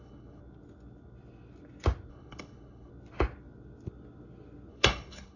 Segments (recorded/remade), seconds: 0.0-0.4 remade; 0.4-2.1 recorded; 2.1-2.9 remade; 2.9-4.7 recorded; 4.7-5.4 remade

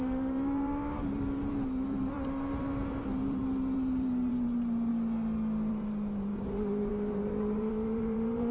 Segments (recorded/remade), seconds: 0.0-4.9 remade; 4.9-5.7 recorded; 5.7-8.5 remade

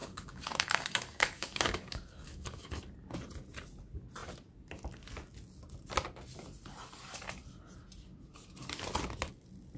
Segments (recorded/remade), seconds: 0.0-2.8 remade; 2.8-9.8 recorded

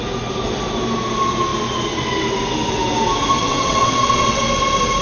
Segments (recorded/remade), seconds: 0.0-3.4 recorded; 3.4-4.4 remade; 4.4-5.0 recorded